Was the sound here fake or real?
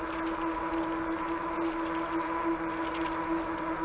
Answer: real